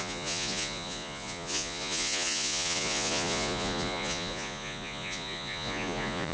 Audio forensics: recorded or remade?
remade